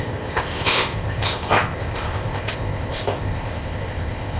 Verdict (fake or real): fake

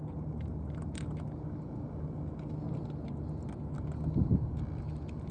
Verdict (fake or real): real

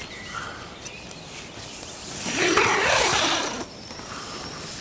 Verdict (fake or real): real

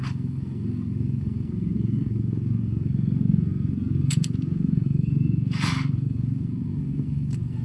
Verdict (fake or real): fake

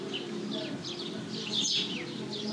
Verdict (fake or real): real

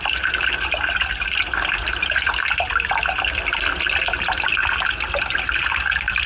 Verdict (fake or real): real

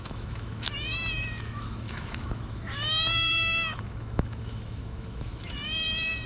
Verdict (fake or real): fake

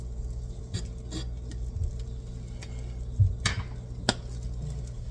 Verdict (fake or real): real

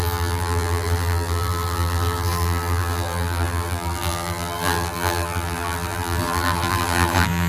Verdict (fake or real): fake